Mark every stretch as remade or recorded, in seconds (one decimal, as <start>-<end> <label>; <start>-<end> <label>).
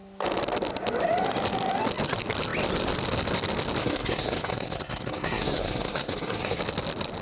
0.0-3.8 recorded; 3.8-6.6 remade; 6.6-7.2 recorded